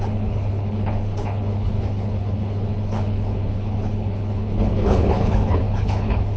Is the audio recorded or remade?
remade